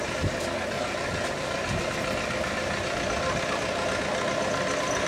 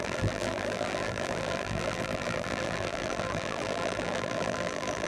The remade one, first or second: second